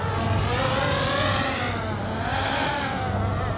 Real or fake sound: real